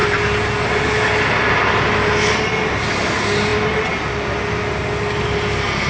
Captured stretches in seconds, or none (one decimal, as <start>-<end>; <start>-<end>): 0.0-5.9